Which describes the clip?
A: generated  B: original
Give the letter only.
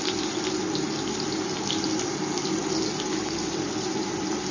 B